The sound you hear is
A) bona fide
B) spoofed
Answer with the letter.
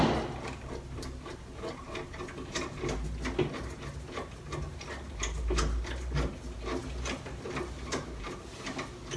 A